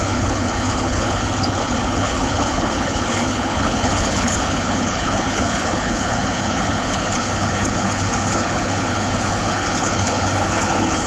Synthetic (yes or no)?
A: yes